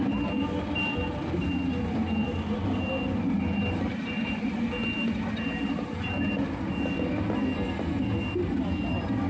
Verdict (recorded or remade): recorded